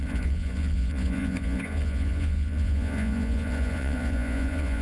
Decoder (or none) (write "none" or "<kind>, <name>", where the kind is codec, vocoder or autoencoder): vocoder, Vocos